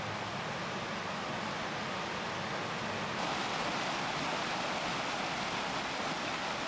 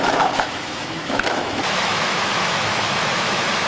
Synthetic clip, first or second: second